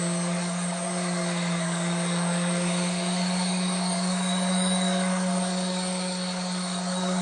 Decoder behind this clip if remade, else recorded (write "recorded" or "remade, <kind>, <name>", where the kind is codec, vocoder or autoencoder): remade, codec, DAC